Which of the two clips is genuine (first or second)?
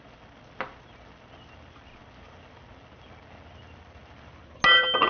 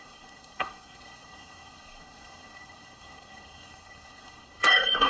first